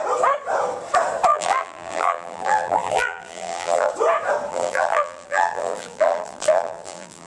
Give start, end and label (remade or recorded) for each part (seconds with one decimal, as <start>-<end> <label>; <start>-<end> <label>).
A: 0.0-1.3 recorded; 1.3-3.9 remade; 3.9-4.5 recorded; 4.5-7.3 remade